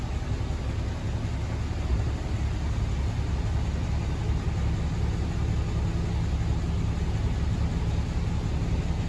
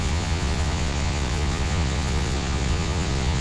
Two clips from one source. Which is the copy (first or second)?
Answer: second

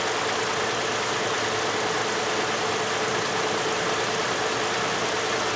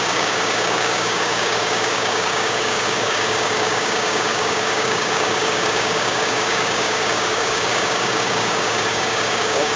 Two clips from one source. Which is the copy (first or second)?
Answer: second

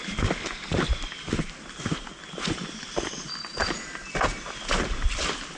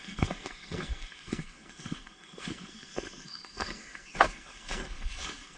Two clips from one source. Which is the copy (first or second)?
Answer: second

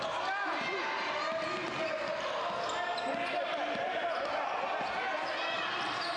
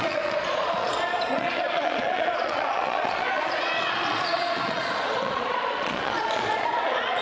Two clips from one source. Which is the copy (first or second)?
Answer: second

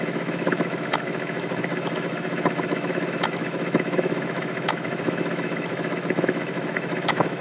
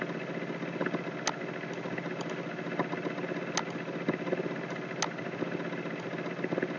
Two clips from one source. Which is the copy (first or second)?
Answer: first